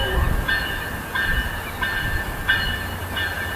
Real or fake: real